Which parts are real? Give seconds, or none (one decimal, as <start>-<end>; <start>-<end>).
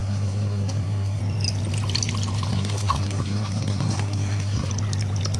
1.2-2.5; 4.7-5.4